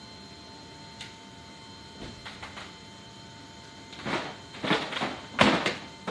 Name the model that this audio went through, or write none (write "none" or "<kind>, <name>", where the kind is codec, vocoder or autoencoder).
none